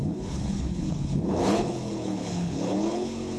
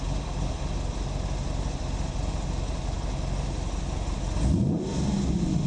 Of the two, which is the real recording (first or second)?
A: second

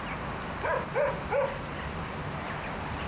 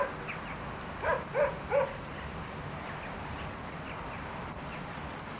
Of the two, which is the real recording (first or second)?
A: first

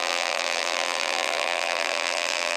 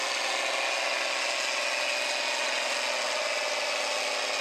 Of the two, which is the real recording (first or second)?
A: second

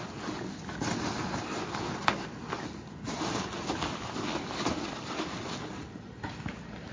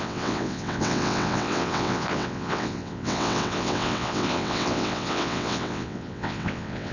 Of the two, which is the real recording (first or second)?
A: first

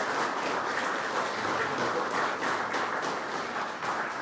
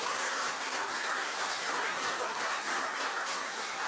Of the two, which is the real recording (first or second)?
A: first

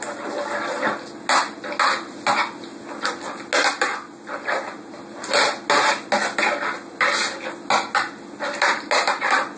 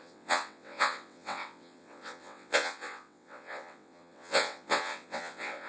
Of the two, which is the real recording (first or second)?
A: first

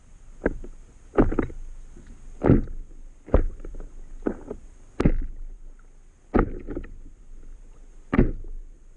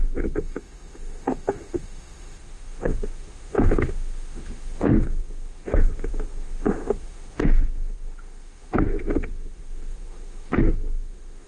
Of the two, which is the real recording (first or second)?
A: first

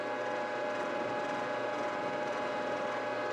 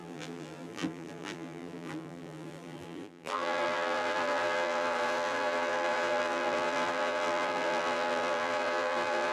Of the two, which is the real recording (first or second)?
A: first